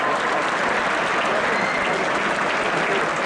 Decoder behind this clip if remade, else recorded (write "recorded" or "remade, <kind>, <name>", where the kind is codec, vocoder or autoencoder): recorded